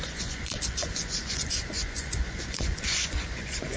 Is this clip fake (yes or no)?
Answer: yes